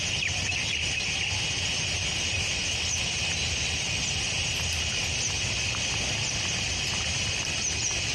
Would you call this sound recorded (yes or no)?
yes